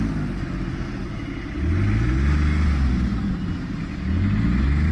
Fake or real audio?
real